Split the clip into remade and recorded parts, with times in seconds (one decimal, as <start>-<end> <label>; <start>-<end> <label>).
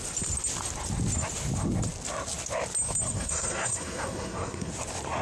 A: 0.0-3.1 recorded; 3.1-4.7 remade; 4.7-5.2 recorded